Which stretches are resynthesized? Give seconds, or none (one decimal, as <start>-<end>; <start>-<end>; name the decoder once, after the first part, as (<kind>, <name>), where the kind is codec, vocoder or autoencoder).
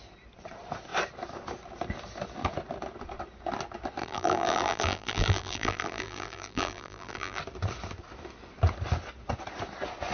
4.0-7.4 (vocoder, BigVGAN v2)